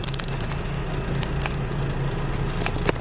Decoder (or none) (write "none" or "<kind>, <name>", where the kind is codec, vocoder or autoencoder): none